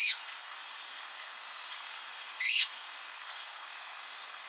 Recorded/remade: remade